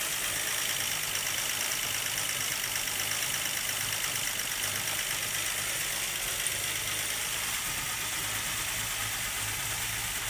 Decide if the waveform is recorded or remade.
recorded